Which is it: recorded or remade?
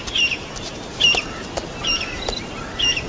recorded